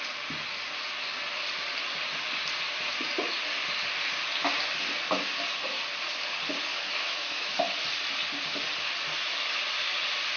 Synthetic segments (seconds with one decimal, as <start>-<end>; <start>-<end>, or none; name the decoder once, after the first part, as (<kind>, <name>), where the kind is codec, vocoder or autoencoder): 6.7-7.5 (autoencoder, DAC-VAE)